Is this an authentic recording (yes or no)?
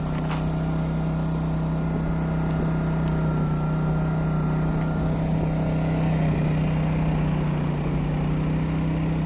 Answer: yes